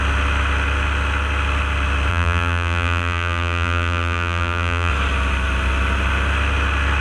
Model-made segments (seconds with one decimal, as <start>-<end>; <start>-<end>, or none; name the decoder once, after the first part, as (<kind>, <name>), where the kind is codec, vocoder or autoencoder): 2.1-4.9 (vocoder, BigVGAN v2)